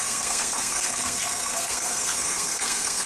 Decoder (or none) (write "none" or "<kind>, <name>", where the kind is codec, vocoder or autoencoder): codec, SNAC